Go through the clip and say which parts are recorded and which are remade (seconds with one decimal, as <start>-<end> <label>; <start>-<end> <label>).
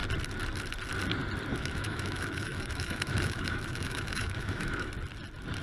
0.0-1.5 recorded; 1.5-4.9 remade; 4.9-5.6 recorded